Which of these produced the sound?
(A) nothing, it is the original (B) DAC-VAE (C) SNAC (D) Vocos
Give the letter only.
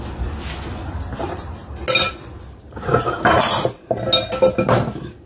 A